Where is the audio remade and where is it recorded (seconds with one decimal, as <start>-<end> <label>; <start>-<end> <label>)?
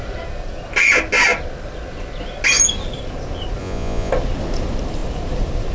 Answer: 0.0-3.6 recorded; 3.6-4.1 remade; 4.1-5.7 recorded